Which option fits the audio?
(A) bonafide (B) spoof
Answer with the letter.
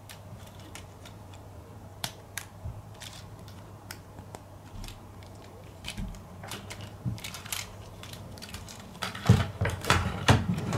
B